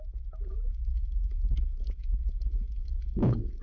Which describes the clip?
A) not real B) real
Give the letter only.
A